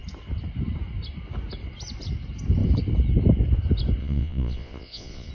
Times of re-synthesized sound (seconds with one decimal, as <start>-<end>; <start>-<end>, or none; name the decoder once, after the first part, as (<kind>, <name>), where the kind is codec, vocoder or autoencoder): 4.0-5.3 (vocoder, Vocos)